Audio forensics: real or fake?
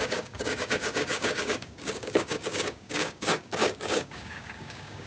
fake